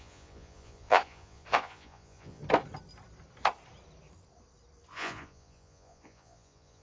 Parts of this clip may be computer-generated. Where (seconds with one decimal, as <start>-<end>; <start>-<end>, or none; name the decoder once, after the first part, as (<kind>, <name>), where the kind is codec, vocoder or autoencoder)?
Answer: 0.0-2.4 (vocoder, Vocos); 4.9-6.8